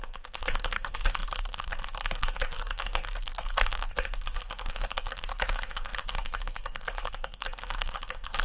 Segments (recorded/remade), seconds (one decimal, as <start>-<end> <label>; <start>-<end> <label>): 0.0-8.4 remade